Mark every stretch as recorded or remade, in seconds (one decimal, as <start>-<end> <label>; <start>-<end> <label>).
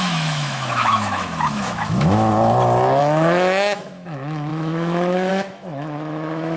0.0-2.3 remade; 2.3-3.0 recorded; 3.0-6.6 remade